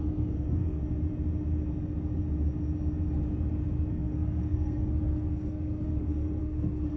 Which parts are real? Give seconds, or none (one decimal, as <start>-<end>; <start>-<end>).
0.8-3.9